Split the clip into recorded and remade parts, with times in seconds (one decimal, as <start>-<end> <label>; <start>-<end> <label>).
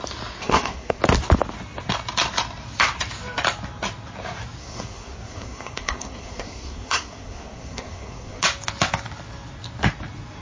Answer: 0.0-0.4 recorded; 0.4-1.0 remade; 1.0-4.6 recorded; 4.6-8.4 remade; 8.4-10.4 recorded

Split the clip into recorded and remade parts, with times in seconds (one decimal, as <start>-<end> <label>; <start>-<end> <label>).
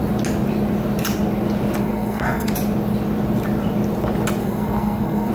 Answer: 0.0-1.8 recorded; 1.8-2.5 remade; 2.5-4.4 recorded; 4.4-5.3 remade